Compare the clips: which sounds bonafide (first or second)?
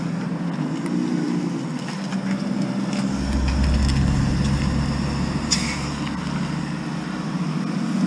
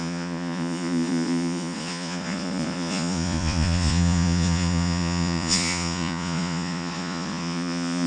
first